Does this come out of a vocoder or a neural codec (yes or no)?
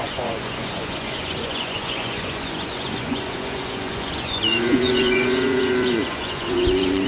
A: yes